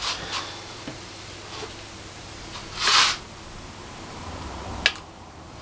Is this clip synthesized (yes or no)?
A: no